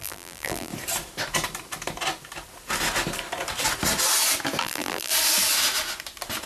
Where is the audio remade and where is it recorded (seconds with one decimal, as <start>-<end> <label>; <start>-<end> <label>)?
0.0-0.7 remade; 0.7-4.6 recorded; 4.6-5.1 remade; 5.1-6.5 recorded

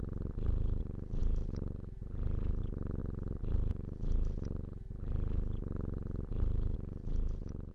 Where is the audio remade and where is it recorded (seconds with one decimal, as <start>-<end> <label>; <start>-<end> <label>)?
0.0-7.7 recorded

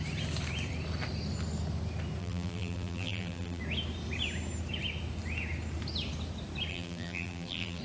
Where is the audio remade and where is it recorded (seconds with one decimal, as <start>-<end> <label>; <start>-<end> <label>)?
0.0-2.2 recorded; 2.2-3.6 remade; 3.6-6.7 recorded; 6.7-7.8 remade

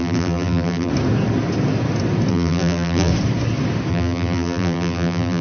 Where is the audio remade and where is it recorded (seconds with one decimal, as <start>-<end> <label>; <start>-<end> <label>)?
0.0-0.9 remade; 0.9-2.3 recorded; 2.3-3.1 remade; 3.1-3.9 recorded; 3.9-5.4 remade

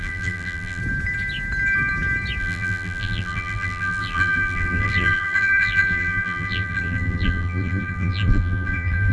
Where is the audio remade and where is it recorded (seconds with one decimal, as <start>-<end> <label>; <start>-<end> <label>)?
0.0-0.8 remade; 0.8-2.4 recorded; 2.4-9.1 remade

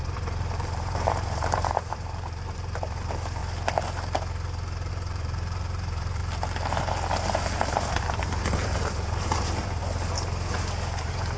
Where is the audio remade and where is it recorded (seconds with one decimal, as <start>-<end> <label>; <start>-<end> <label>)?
0.0-3.4 remade; 3.4-4.9 recorded; 4.9-6.2 remade; 6.2-7.7 recorded; 7.7-9.8 remade; 9.8-11.0 recorded; 11.0-11.4 remade

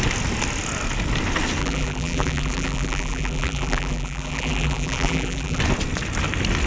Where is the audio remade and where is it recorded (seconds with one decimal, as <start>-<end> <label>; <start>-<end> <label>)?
0.0-1.6 recorded; 1.6-5.6 remade; 5.6-6.7 recorded

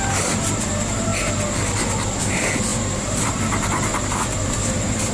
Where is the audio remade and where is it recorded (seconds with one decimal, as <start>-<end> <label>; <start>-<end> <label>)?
0.0-1.1 remade; 1.1-2.2 recorded; 2.2-3.9 remade; 3.9-4.4 recorded; 4.4-5.1 remade